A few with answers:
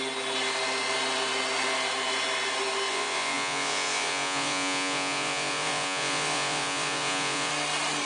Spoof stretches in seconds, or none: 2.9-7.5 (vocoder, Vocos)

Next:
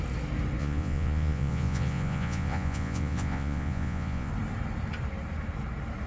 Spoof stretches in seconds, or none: 0.6-4.3 (vocoder, Vocos)

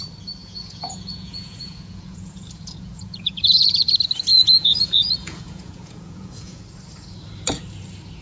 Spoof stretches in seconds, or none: 0.4-3.9 (vocoder, Vocos); 4.3-6.6

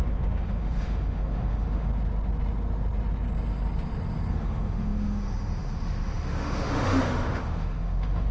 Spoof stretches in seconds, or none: 0.0-1.9 (autoencoder, DAC-VAE); 4.3-8.3

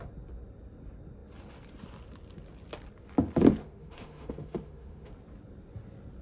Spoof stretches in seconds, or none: 3.6-5.1 (autoencoder, DAC-VAE)

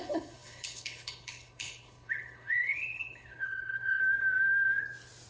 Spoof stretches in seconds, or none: 0.0-4.0 (codec, HILCodec)